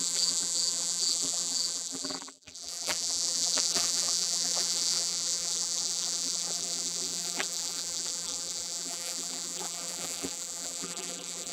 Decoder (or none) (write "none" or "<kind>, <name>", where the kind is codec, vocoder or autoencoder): vocoder, BigVGAN v2